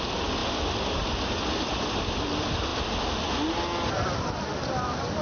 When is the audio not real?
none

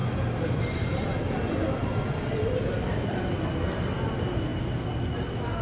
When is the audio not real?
none

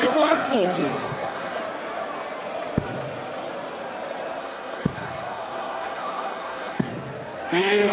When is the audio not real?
0.0-1.6; 4.4-6.9; 7.5-7.9

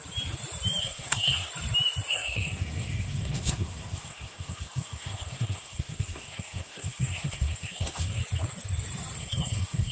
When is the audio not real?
0.8-1.5; 2.1-8.2; 9.2-9.9

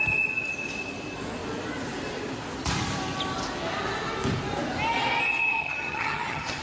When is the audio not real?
5.4-6.6

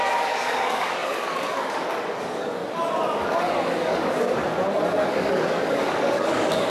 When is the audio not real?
0.0-2.6; 3.2-4.4; 5.1-6.7

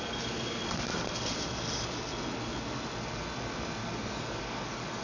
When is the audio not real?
3.8-5.0